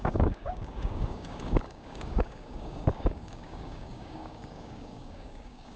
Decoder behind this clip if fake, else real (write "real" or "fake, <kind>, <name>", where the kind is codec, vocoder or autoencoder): fake, codec, DAC